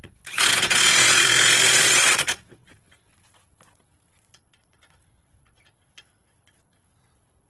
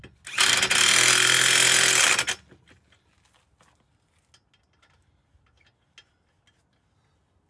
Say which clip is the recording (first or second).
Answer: second